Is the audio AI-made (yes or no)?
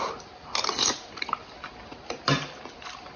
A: no